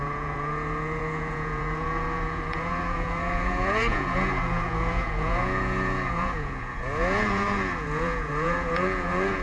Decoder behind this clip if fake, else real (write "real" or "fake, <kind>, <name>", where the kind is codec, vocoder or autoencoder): fake, vocoder, Vocos